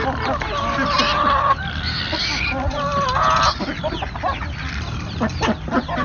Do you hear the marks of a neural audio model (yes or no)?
no